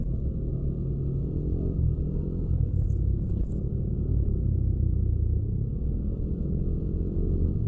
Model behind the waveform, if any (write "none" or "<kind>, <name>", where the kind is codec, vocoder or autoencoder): none